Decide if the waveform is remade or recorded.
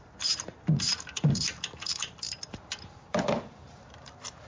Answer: remade